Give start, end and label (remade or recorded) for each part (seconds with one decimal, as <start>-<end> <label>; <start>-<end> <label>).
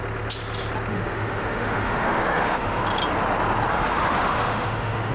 0.0-0.9 recorded; 0.9-2.8 remade; 2.8-3.7 recorded; 3.7-5.1 remade